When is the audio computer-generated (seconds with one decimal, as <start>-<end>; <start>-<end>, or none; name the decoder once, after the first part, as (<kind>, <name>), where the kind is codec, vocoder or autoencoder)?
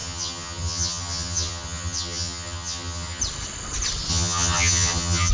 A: 0.0-3.2 (vocoder, HiFi-GAN); 4.1-5.3